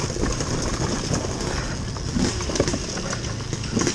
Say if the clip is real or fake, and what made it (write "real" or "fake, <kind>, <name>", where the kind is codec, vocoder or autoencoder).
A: real